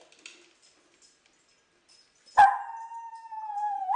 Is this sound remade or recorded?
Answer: recorded